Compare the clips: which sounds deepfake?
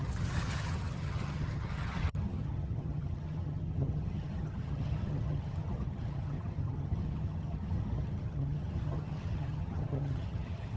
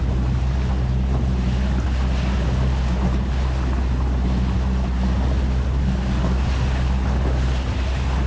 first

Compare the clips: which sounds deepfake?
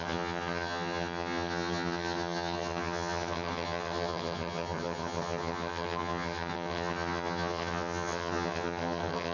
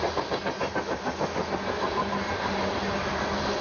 first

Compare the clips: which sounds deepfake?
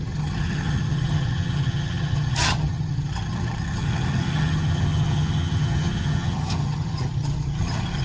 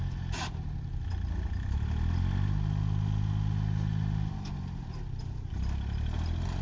first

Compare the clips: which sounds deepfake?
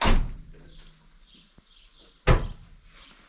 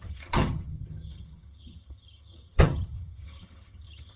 second